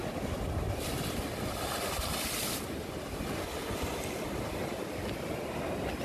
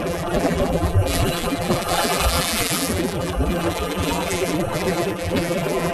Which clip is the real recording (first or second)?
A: first